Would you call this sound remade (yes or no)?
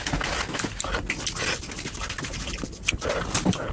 no